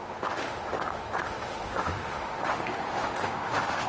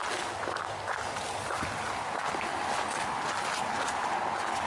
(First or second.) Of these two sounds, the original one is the second